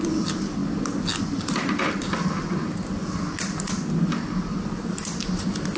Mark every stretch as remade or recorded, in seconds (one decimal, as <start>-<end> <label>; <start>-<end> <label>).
0.0-5.8 recorded